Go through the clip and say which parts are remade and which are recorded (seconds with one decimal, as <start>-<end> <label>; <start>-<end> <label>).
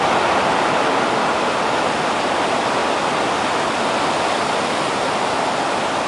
0.0-6.1 recorded